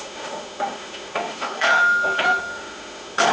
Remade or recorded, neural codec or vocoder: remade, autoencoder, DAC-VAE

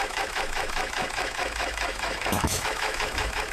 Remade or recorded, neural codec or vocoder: remade, autoencoder, DAC-VAE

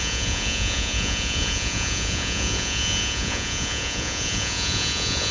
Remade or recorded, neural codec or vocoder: remade, vocoder, Vocos